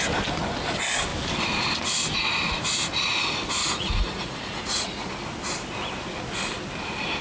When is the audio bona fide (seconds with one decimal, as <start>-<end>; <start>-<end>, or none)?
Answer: 0.0-3.6; 5.1-7.2